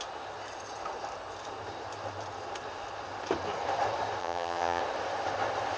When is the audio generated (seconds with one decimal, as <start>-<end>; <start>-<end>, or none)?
4.2-4.8